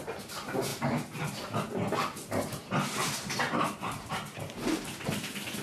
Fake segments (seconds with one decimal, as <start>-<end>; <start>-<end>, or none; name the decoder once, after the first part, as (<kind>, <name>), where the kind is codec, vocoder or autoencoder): none